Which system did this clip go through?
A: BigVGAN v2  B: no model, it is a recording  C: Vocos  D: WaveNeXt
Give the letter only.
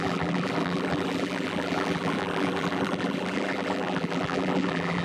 A